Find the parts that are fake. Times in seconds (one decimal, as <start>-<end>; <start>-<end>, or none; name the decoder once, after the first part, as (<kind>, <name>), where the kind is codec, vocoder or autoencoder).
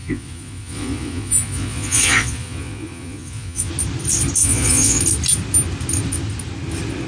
0.0-3.7 (vocoder, Vocos); 4.4-5.0